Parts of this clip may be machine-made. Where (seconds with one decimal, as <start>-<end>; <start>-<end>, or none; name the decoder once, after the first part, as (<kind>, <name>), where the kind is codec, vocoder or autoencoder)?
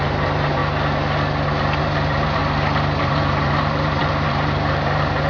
0.0-0.6 (vocoder, BigVGAN v2); 1.8-2.4; 3.0-5.3